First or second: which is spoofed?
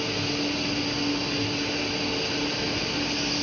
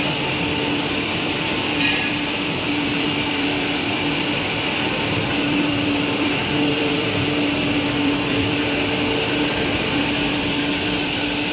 second